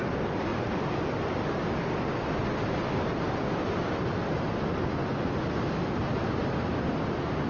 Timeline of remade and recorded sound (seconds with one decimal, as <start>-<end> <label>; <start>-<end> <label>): 0.0-7.5 recorded